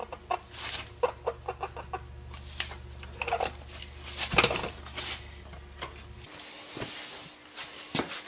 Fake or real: real